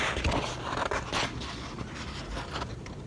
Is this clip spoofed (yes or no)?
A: yes